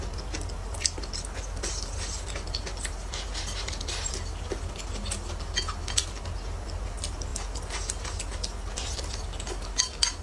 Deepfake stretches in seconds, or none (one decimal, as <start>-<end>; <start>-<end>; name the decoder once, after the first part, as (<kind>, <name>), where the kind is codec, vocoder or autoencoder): none